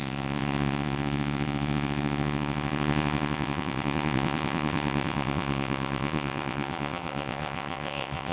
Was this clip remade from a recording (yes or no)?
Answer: yes